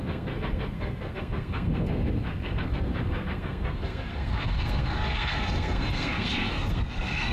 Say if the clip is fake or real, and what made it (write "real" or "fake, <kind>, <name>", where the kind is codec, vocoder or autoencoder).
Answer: fake, codec, SNAC